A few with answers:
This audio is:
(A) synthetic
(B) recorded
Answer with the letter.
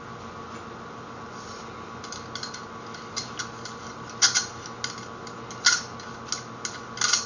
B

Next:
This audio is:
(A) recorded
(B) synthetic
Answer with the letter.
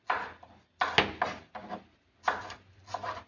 A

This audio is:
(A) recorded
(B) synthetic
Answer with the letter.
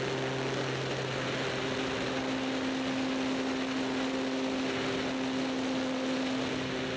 A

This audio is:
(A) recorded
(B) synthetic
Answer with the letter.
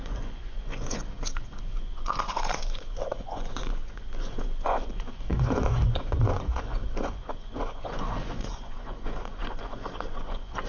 B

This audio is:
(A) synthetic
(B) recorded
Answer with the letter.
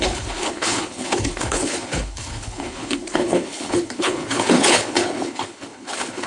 A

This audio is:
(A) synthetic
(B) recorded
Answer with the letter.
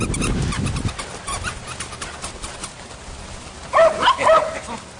B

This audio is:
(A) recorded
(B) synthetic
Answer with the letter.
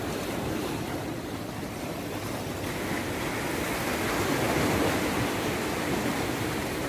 A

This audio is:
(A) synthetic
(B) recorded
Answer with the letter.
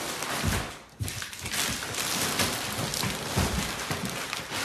B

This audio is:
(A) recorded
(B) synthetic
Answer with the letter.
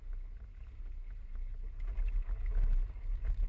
A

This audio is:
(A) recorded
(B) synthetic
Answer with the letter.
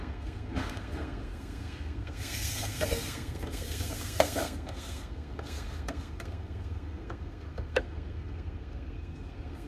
B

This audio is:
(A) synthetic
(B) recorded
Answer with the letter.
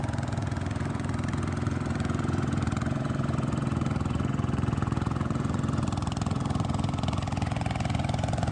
A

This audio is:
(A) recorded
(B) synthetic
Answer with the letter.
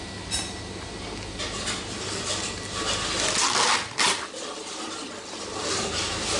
A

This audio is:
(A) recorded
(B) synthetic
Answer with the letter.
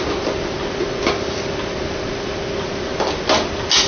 A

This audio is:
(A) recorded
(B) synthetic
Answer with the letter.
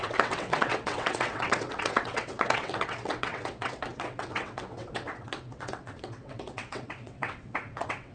B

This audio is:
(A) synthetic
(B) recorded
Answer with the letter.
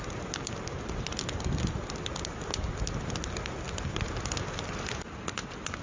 B